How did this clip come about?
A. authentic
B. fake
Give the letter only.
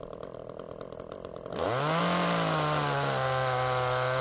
A